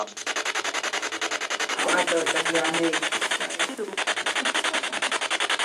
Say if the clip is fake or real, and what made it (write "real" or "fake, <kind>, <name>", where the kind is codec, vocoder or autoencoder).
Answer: real